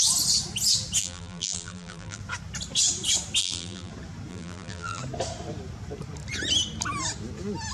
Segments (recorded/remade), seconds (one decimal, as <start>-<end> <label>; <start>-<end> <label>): 0.0-1.0 recorded; 1.0-2.2 remade; 2.2-3.4 recorded; 3.4-3.9 remade; 3.9-4.3 recorded; 4.3-5.0 remade; 5.0-7.7 recorded

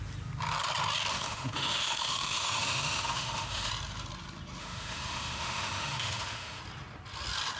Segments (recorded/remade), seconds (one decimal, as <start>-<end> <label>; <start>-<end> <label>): 0.0-1.1 recorded; 1.1-3.7 remade; 3.7-4.6 recorded; 4.6-6.6 remade; 6.6-7.6 recorded

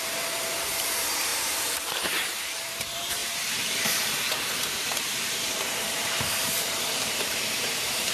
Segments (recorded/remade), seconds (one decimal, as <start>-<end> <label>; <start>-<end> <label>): 0.0-8.1 remade

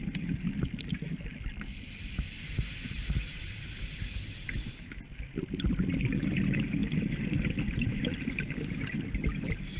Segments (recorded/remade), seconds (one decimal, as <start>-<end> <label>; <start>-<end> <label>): 0.0-9.8 recorded